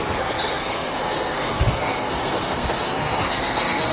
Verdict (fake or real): fake